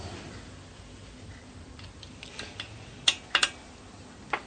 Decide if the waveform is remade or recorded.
recorded